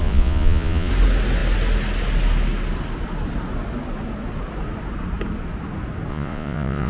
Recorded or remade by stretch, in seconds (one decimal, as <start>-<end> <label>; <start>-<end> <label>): 0.0-0.9 remade; 0.9-6.1 recorded; 6.1-6.9 remade